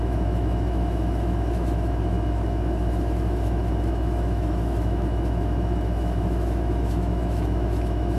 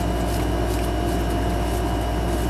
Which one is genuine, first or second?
second